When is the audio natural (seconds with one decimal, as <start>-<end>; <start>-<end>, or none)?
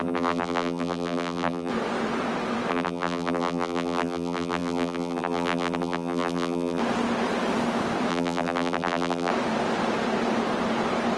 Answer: 1.7-2.7; 6.8-8.1; 9.3-11.2